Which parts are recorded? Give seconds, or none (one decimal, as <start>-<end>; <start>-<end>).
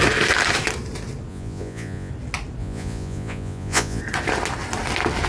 0.0-1.3; 2.1-2.6; 4.0-5.3